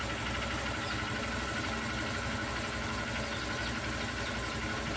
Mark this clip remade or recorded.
recorded